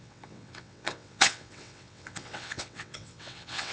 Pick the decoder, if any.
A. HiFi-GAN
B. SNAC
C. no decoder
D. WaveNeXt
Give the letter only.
D